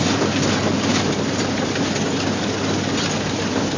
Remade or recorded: recorded